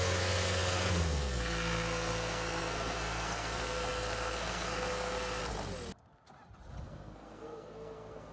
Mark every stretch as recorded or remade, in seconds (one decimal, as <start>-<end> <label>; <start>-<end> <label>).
0.0-5.4 remade; 5.4-6.8 recorded; 6.8-8.3 remade